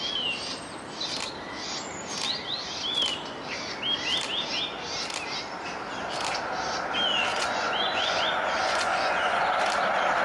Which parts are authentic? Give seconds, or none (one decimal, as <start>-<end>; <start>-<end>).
0.0-7.3; 9.6-10.2